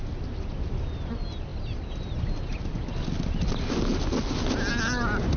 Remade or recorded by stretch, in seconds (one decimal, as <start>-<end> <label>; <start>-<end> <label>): 0.0-5.4 recorded